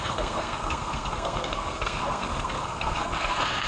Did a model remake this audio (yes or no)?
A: yes